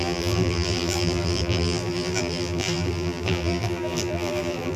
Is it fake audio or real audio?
fake